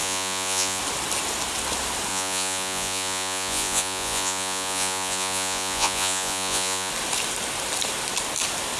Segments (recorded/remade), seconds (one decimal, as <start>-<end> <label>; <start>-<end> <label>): 0.0-0.8 remade; 0.8-2.1 recorded; 2.1-6.9 remade; 6.9-8.8 recorded